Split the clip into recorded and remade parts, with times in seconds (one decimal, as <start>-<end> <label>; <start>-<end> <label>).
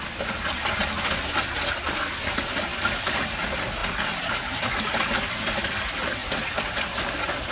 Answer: 0.0-7.5 recorded